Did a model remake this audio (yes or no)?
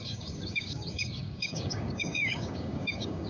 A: yes